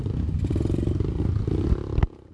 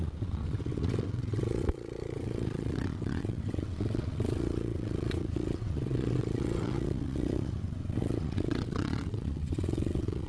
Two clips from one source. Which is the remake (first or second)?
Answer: second